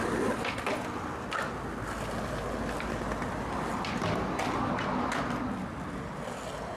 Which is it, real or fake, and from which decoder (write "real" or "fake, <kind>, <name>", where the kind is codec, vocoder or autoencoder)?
real